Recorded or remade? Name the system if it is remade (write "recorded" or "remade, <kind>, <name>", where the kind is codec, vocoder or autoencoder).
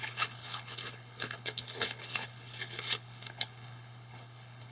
remade, codec, HILCodec